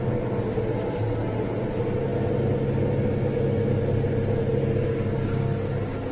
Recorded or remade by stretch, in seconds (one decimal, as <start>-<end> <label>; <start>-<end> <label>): 0.0-6.1 recorded